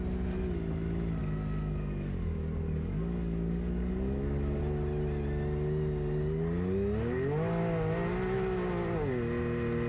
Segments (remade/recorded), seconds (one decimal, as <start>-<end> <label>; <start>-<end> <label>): 0.0-1.2 recorded; 1.2-4.6 remade; 4.6-9.9 recorded

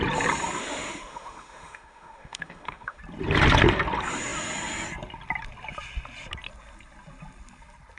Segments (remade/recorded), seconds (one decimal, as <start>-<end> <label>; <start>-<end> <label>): 0.0-0.6 recorded; 0.6-3.0 remade; 3.0-8.0 recorded

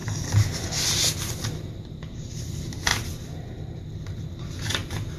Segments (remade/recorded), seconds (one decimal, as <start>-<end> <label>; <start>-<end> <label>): 0.0-1.8 recorded; 1.8-2.9 remade; 2.9-5.2 recorded

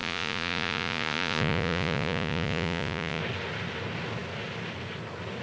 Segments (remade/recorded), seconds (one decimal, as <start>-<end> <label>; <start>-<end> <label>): 0.0-3.2 remade; 3.2-5.4 recorded

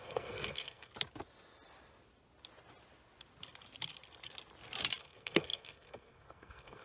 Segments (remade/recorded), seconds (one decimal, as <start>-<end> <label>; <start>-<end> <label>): 0.0-0.9 remade; 0.9-5.0 recorded; 5.0-6.8 remade

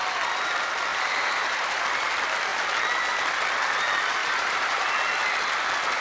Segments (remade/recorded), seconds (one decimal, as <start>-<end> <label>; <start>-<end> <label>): 0.0-0.9 recorded; 0.9-2.1 remade; 2.1-4.2 recorded; 4.2-4.9 remade; 4.9-6.0 recorded

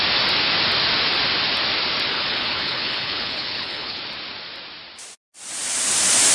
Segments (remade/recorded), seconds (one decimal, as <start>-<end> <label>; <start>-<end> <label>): 0.0-2.1 recorded; 2.1-4.0 remade; 4.0-6.3 recorded